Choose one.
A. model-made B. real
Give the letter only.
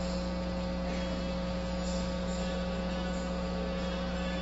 B